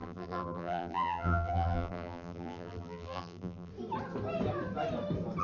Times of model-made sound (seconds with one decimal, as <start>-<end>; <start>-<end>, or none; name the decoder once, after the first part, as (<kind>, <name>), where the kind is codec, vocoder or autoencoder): 0.0-3.7 (vocoder, BigVGAN v2)